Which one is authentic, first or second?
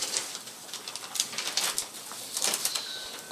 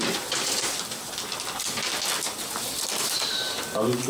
second